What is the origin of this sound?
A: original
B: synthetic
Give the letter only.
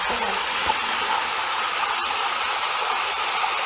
A